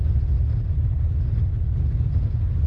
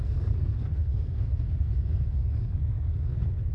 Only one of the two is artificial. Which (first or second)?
second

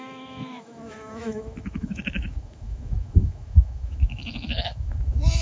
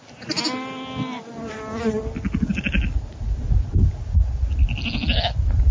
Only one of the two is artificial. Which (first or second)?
first